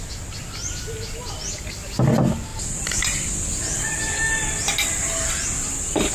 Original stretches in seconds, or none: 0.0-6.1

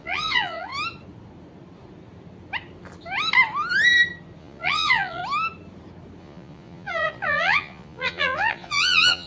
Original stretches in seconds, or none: 0.7-4.4; 5.2-6.2

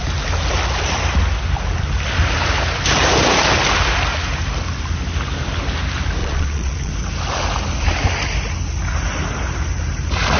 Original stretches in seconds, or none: 0.0-6.2; 6.9-10.4

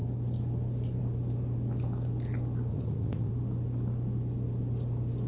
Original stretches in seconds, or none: 0.0-2.7; 3.3-5.3

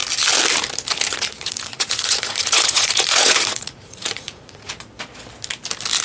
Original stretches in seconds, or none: 0.0-1.1; 4.7-6.0

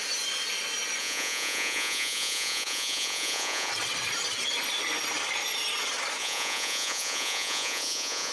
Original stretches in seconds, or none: 0.0-1.0; 3.7-6.2